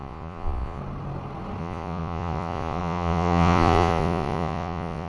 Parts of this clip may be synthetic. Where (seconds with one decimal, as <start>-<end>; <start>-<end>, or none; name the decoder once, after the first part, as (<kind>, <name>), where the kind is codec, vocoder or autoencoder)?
0.0-0.8 (vocoder, Vocos); 1.6-5.1

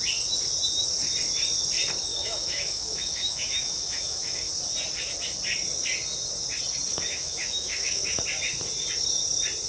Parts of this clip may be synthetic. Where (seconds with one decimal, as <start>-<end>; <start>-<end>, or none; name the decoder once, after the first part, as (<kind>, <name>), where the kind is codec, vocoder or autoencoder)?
2.1-4.5 (autoencoder, DAC-VAE); 6.9-8.2

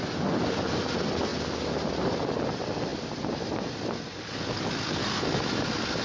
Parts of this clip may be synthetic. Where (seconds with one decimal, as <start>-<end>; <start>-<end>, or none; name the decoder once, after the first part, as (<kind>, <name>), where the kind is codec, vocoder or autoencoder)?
none

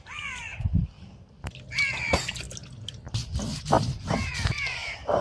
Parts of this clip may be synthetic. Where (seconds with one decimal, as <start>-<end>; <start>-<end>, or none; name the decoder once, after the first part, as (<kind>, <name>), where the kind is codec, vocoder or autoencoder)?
none

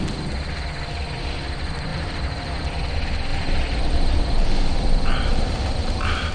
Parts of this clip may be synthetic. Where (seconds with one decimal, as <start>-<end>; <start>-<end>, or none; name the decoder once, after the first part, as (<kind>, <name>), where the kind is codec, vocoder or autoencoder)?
1.9-2.6 (vocoder, BigVGAN v2); 3.3-6.3

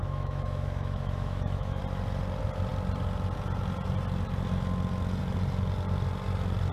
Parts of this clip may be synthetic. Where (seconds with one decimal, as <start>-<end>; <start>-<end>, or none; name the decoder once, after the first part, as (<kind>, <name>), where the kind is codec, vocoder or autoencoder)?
0.0-1.8 (autoencoder, DAC-VAE)

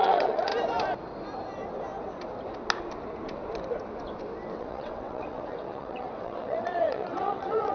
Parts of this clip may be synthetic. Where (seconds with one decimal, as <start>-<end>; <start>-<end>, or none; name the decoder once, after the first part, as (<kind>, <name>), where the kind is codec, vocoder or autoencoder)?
0.0-0.5 (vocoder, WaveNeXt); 4.5-7.7

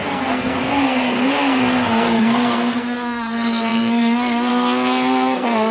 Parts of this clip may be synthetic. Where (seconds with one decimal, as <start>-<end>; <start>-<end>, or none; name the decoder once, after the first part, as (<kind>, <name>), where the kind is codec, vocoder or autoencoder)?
0.0-5.7 (codec, SNAC)